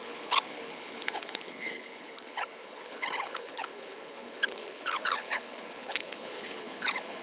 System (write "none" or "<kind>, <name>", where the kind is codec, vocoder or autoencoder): codec, HILCodec